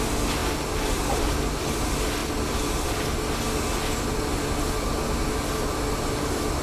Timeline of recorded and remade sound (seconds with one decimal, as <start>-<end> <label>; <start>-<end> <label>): 0.0-6.6 recorded